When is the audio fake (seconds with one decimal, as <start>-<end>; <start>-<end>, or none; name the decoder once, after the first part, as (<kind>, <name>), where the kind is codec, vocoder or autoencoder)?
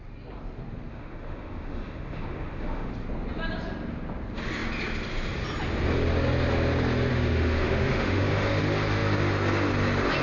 0.9-2.9 (autoencoder, DAC-VAE); 7.1-8.6